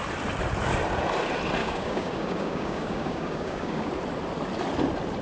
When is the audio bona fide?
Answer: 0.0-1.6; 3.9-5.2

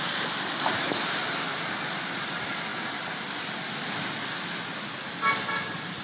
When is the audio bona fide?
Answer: 0.0-6.0

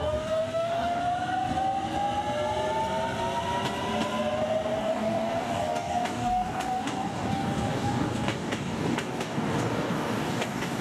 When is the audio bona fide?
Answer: 1.0-4.8